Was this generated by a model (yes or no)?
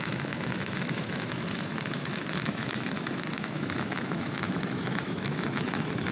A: yes